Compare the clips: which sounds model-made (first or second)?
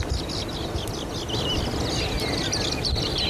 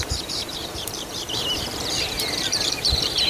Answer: second